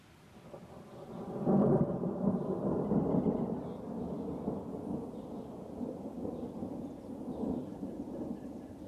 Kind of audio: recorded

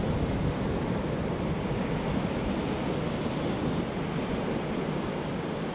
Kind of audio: recorded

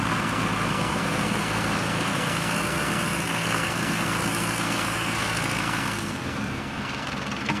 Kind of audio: remade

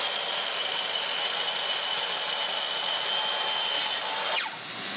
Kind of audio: recorded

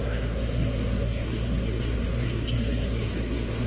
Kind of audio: remade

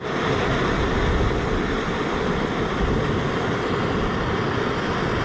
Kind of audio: recorded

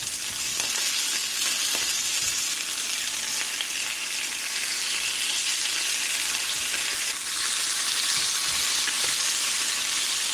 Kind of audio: recorded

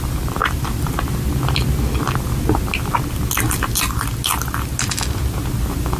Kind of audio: recorded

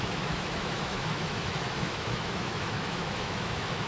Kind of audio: remade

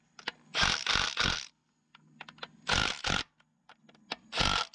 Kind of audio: recorded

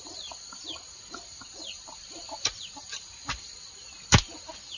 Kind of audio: remade